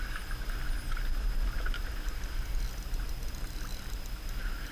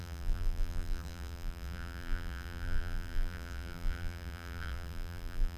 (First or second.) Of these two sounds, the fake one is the second